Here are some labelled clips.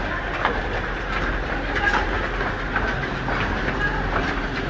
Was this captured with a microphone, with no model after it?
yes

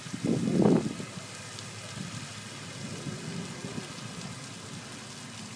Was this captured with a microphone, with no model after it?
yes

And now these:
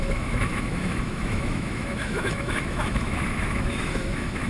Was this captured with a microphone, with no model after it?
no